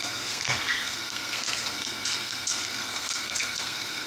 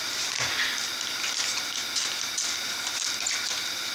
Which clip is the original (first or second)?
second